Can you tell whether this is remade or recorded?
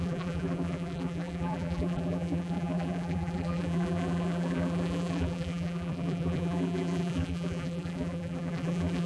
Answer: remade